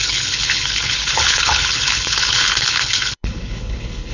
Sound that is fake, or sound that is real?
fake